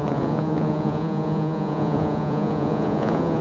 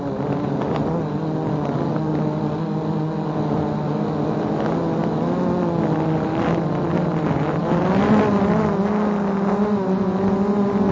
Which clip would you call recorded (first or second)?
second